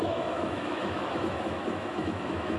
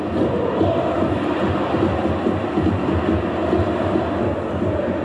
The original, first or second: second